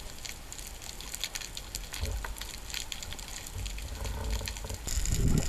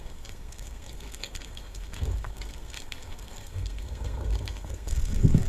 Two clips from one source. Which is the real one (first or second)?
first